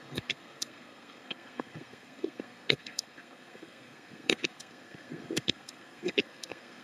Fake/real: fake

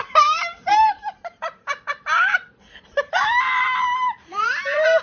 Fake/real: fake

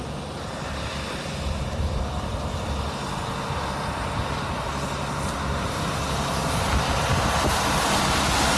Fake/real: real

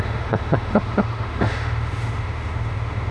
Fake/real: fake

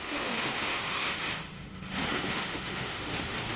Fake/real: fake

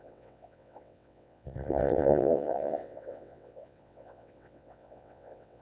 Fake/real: fake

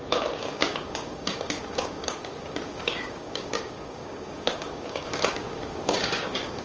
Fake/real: fake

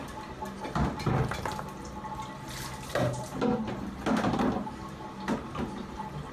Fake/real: real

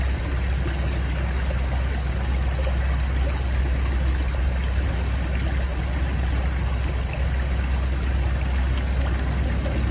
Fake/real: real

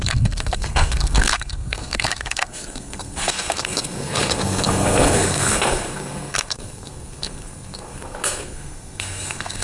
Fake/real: fake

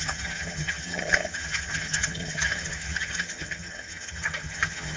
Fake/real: fake